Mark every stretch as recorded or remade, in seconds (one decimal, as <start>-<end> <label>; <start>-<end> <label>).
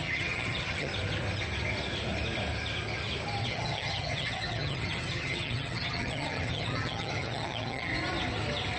0.0-0.9 remade; 0.9-3.5 recorded; 3.5-7.9 remade; 7.9-8.8 recorded